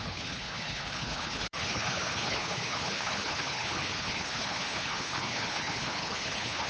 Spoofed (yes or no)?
yes